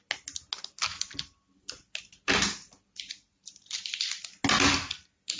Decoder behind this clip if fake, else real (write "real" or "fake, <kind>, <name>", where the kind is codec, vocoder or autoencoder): real